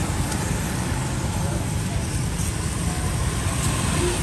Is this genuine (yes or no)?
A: yes